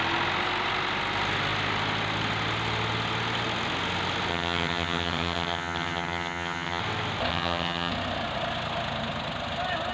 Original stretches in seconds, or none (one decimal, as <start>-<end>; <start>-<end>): 0.0-4.3; 6.8-7.3; 7.9-9.9